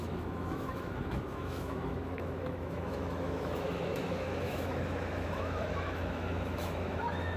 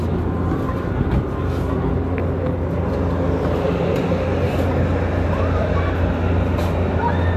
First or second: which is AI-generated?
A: first